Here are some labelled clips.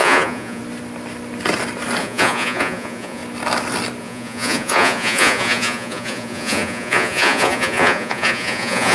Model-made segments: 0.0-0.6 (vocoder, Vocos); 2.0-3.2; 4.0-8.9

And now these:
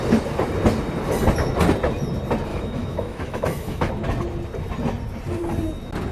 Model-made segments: 2.5-3.9 (autoencoder, DAC-VAE)

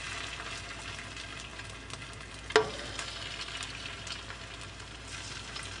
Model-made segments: none

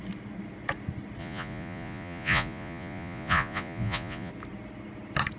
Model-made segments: 1.2-4.3 (vocoder, Vocos)

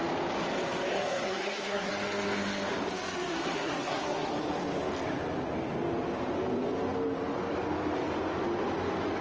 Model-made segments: 0.9-1.9 (codec, SNAC); 3.3-4.3

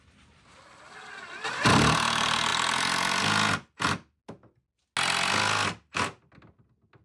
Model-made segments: none

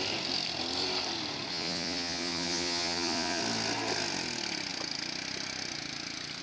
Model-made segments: 1.5-3.4 (vocoder, Vocos)